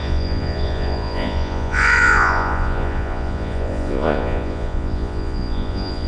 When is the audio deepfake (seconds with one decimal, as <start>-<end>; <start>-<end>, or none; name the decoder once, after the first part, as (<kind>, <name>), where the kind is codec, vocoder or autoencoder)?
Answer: 0.0-6.1 (vocoder, Vocos)